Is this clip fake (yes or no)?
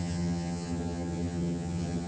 yes